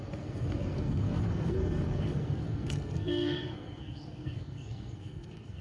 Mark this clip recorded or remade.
remade